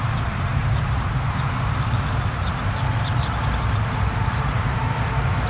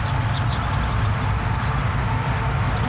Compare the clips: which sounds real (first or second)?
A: second